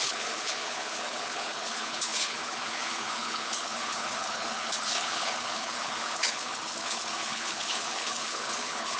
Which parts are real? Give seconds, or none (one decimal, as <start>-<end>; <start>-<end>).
none